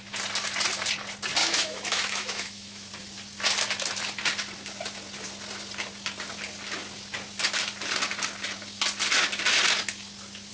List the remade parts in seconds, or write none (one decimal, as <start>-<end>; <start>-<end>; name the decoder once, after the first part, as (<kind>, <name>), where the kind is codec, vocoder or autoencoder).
1.4-2.9 (autoencoder, DAC-VAE)